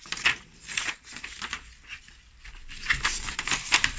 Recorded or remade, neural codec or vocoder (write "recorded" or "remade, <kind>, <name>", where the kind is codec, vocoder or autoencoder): remade, vocoder, BigVGAN v2